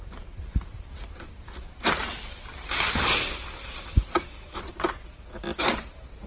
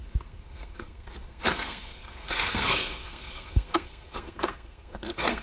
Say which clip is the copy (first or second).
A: second